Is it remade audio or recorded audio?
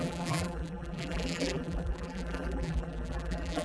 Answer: remade